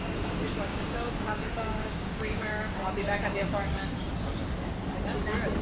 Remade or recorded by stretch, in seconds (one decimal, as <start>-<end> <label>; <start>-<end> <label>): 0.0-0.7 recorded; 0.7-4.1 remade; 4.1-5.6 recorded